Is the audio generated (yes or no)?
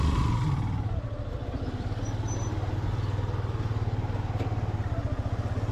no